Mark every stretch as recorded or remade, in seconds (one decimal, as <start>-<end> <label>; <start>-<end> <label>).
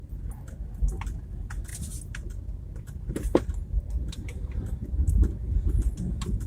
0.0-6.5 recorded